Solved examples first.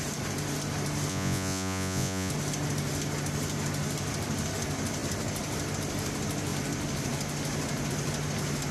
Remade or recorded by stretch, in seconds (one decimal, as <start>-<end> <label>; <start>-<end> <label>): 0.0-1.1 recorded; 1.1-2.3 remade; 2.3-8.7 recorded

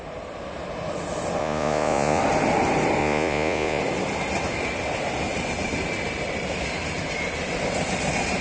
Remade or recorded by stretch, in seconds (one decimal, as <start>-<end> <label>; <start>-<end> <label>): 0.0-1.4 recorded; 1.4-2.2 remade; 2.2-3.0 recorded; 3.0-3.8 remade; 3.8-8.4 recorded

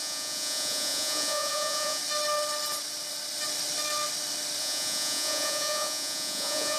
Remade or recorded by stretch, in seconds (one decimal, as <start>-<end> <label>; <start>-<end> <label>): 0.0-2.0 remade; 2.0-4.6 recorded; 4.6-6.8 remade

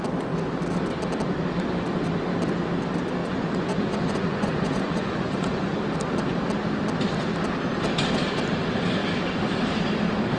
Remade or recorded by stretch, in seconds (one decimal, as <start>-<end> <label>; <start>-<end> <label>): 0.0-3.2 recorded; 3.2-5.8 remade; 5.8-10.4 recorded

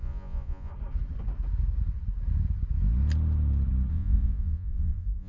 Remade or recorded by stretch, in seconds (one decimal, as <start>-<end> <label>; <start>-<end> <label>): 0.0-0.7 remade; 0.7-3.9 recorded; 3.9-5.3 remade